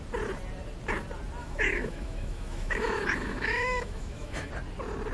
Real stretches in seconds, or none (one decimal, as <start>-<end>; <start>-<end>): 0.0-1.4; 4.5-5.1